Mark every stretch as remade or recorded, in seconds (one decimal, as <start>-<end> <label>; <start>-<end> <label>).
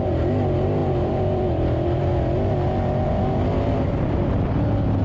0.0-0.8 recorded; 0.8-2.1 remade; 2.1-5.0 recorded